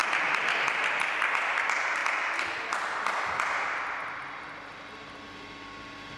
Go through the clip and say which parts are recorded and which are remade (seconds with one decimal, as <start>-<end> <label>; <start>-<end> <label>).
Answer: 0.0-6.2 recorded